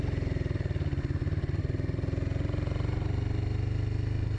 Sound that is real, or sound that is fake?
real